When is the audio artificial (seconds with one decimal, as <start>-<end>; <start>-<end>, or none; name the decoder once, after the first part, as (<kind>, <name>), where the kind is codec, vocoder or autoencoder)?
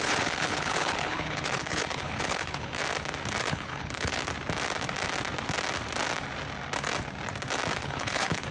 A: 0.0-2.8 (codec, HILCodec); 3.4-4.2; 7.8-8.5